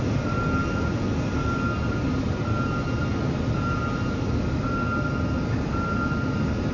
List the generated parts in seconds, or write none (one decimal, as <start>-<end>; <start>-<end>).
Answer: none

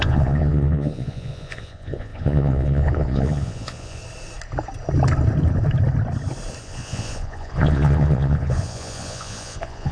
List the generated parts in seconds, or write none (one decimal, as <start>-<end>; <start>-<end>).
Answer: 0.0-4.0; 6.6-9.9